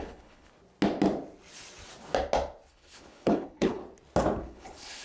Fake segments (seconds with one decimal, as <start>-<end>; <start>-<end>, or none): 0.0-0.5; 2.7-3.8; 4.4-5.0